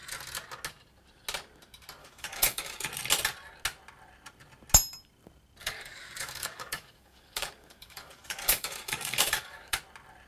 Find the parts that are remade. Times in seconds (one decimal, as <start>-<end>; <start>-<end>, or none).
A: 2.0-2.8; 5.6-9.8